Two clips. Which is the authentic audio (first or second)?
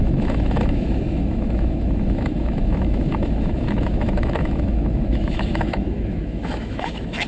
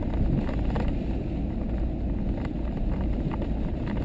second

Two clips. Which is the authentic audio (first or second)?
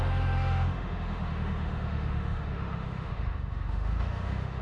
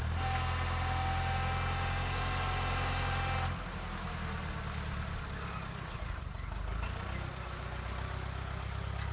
second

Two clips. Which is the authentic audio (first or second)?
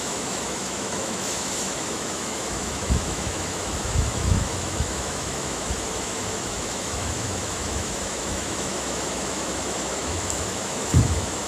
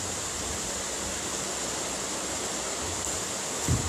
second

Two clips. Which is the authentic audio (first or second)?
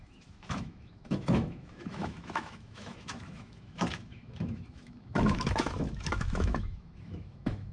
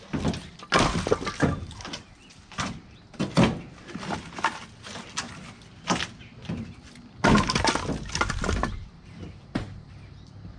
second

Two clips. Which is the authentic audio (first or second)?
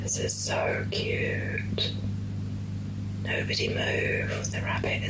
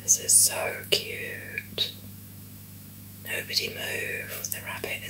first